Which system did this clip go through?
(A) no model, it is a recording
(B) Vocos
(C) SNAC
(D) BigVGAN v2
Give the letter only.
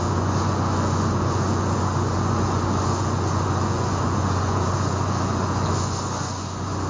B